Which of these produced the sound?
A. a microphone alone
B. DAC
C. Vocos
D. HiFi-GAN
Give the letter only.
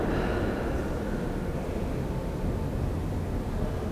A